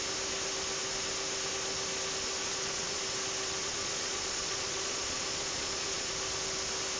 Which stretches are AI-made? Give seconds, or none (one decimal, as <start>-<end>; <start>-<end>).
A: 2.4-3.0; 3.6-6.1